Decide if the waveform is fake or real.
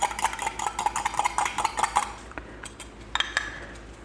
real